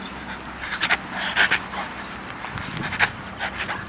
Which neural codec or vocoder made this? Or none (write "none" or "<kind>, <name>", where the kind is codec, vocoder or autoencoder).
none